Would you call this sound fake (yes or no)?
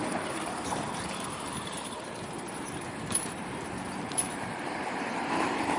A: yes